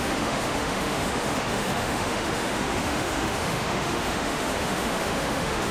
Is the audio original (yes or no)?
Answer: no